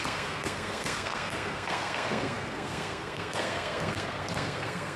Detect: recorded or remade remade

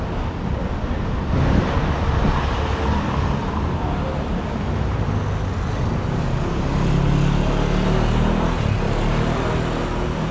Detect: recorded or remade recorded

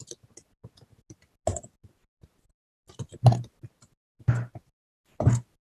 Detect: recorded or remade recorded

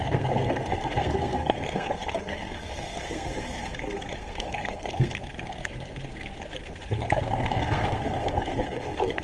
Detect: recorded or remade remade